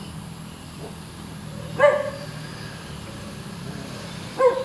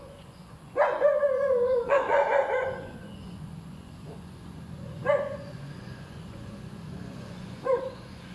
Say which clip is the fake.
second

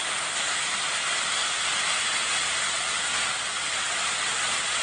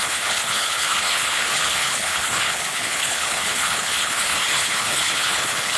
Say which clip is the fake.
second